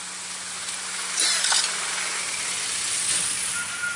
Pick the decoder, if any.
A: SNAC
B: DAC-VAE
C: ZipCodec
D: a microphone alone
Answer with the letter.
D